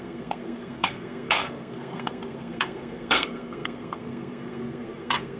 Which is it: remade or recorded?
remade